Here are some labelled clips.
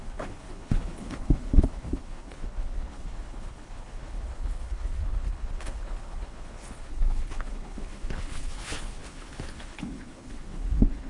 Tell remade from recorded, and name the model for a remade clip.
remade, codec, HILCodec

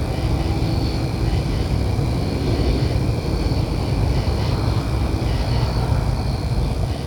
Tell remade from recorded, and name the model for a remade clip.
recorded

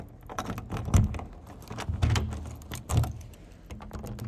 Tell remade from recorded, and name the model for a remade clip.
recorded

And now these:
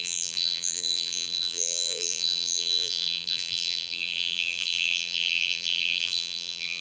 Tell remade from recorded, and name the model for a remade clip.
remade, vocoder, BigVGAN v2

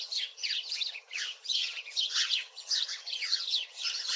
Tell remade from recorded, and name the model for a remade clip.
remade, vocoder, HiFi-GAN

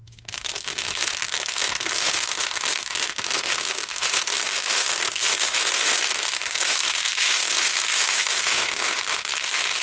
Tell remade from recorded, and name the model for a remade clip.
remade, autoencoder, DAC-VAE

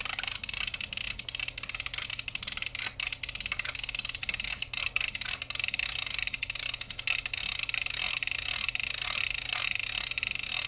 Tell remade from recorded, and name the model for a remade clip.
recorded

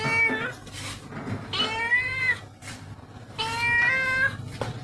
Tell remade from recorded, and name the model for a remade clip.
recorded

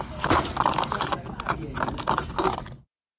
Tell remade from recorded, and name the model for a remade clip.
recorded